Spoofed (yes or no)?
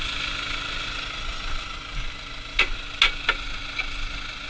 no